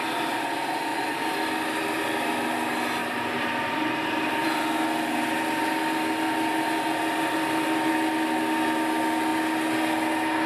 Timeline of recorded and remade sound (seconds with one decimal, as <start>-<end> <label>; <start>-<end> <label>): 0.0-3.0 recorded; 3.0-3.9 remade; 3.9-10.5 recorded